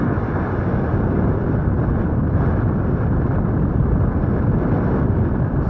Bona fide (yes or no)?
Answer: yes